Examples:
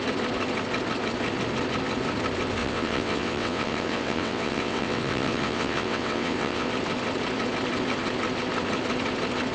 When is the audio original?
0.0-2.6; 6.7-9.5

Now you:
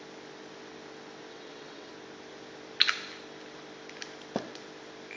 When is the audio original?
0.0-1.3; 1.9-5.2